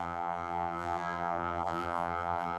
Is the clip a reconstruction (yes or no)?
yes